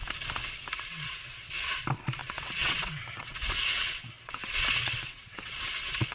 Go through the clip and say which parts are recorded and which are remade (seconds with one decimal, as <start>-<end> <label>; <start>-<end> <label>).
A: 0.0-0.9 recorded; 0.9-1.8 remade; 1.8-2.2 recorded; 2.2-6.1 remade